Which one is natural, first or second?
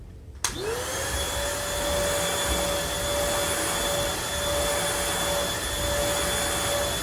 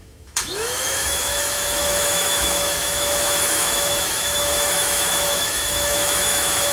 first